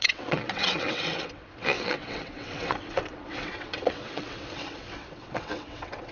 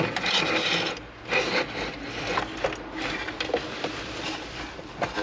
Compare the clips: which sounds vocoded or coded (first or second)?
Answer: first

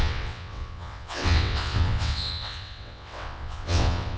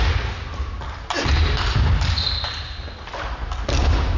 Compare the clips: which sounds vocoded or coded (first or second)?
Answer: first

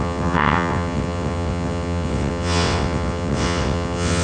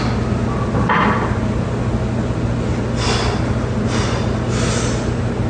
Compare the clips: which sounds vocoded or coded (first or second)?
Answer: first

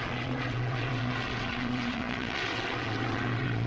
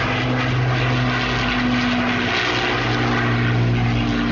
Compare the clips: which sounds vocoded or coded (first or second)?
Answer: first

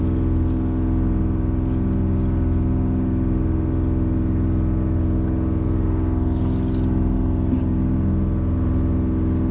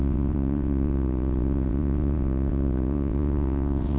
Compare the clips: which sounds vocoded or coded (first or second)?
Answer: second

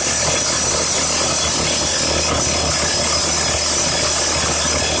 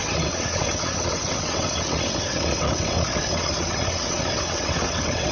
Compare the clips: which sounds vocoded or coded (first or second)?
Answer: second